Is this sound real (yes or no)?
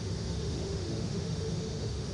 no